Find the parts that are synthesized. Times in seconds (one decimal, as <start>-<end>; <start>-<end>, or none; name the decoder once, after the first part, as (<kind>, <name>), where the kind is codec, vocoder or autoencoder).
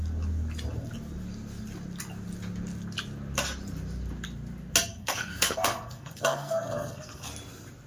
4.9-7.3 (codec, SNAC)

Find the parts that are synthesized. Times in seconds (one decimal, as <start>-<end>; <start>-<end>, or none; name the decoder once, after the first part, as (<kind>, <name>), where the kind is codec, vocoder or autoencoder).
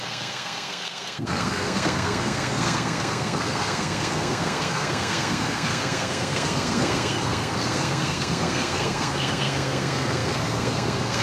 0.0-11.2 (codec, SNAC)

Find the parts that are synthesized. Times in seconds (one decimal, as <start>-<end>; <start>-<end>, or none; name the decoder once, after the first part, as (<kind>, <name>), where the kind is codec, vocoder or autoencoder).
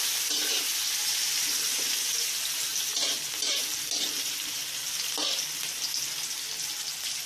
none